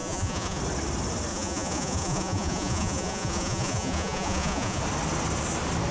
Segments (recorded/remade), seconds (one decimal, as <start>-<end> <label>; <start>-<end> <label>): 0.0-0.6 remade; 0.6-1.3 recorded; 1.3-4.8 remade; 4.8-5.9 recorded